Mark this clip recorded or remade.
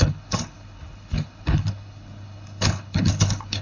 remade